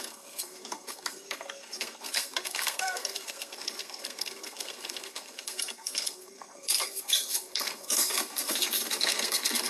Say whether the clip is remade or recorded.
remade